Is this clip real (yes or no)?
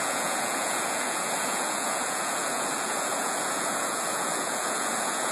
no